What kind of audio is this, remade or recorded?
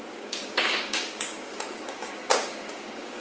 remade